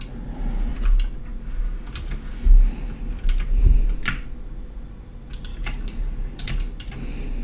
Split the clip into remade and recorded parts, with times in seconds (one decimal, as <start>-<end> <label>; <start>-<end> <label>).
0.0-5.5 recorded; 5.5-6.6 remade; 6.6-7.4 recorded